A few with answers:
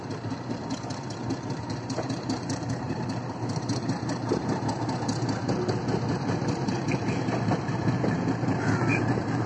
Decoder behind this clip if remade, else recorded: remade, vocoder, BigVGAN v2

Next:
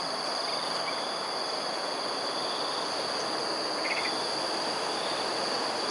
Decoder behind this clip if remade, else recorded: recorded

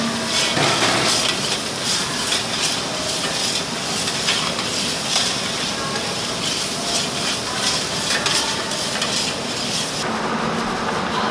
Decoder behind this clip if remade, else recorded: recorded